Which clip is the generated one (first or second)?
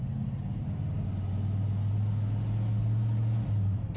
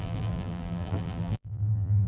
second